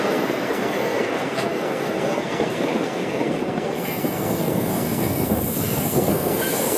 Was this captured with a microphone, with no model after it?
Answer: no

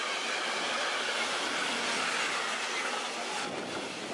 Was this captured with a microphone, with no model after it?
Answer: yes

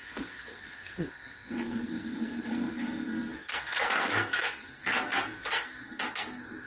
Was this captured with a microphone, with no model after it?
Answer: no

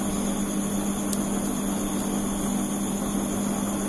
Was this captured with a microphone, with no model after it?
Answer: yes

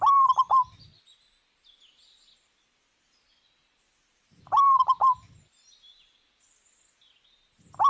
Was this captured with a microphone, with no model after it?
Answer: yes